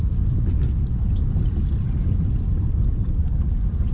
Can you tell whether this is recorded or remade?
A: recorded